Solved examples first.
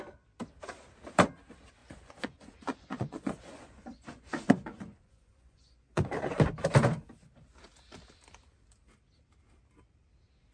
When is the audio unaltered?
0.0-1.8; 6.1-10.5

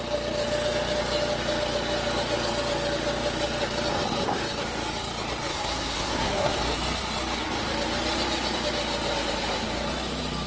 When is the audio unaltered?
0.0-5.5; 6.6-10.5

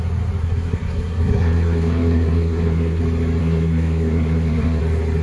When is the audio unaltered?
0.0-0.4; 3.0-3.4; 4.8-5.2

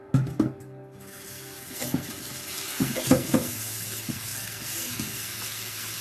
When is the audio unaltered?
none